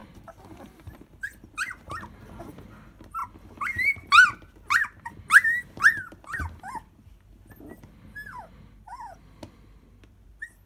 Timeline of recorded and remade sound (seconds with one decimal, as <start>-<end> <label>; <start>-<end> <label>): 0.0-1.3 remade; 1.3-10.7 recorded